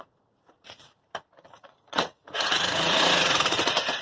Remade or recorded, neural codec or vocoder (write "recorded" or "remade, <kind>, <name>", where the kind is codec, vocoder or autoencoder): remade, vocoder, Vocos